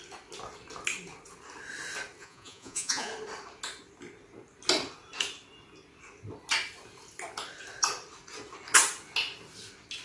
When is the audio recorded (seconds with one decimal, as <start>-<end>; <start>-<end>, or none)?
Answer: 0.0-2.2; 3.1-10.0